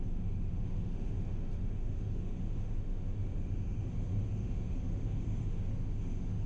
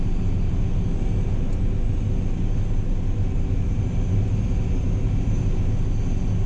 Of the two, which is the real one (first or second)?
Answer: second